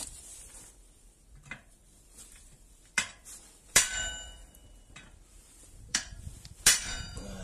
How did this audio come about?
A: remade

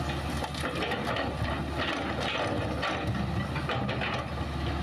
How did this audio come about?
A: recorded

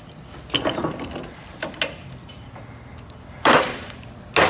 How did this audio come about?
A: recorded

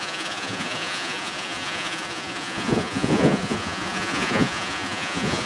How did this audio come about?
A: remade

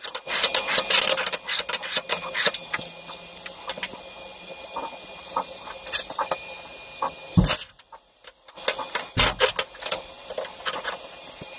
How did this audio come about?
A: recorded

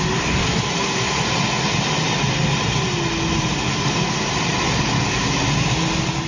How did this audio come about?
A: recorded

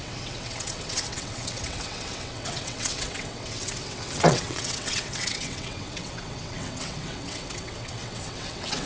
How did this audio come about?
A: remade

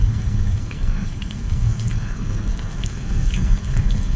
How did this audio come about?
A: remade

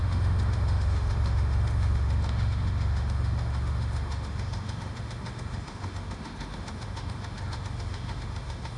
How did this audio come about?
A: remade